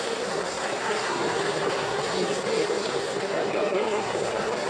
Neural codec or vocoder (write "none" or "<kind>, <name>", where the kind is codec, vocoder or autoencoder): codec, SNAC